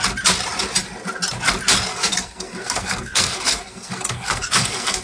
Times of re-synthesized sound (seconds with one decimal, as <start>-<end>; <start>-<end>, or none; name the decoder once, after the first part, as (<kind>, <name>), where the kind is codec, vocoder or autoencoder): 1.9-5.0 (codec, SNAC)